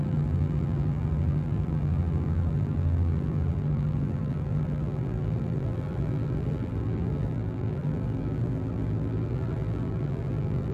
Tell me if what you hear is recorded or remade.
remade